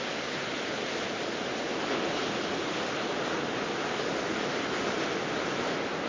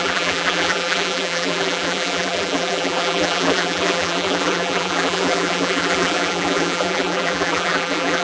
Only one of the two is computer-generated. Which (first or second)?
second